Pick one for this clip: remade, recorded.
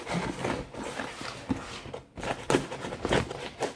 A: recorded